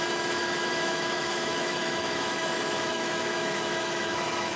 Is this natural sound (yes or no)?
no